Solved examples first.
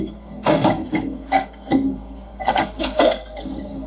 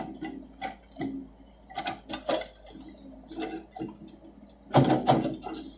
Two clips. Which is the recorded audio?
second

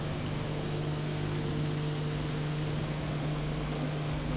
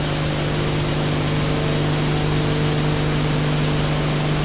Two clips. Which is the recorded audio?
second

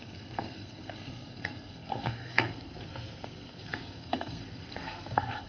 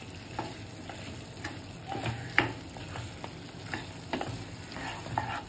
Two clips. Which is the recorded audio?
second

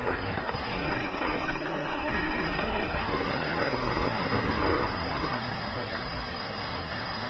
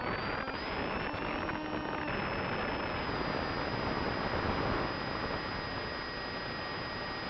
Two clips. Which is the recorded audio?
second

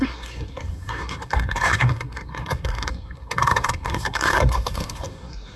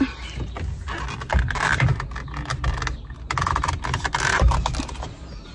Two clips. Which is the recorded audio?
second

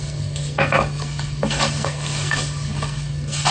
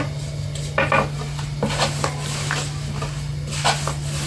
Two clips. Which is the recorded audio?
second